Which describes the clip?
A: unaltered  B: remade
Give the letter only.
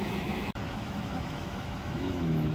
B